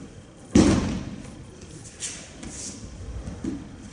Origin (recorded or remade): recorded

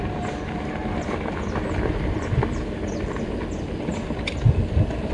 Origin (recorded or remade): recorded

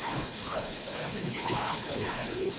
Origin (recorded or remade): remade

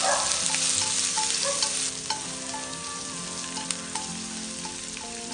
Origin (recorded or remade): recorded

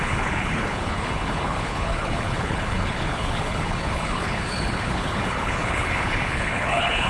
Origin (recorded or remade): remade